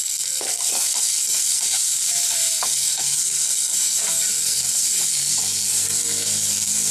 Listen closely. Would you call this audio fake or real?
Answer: fake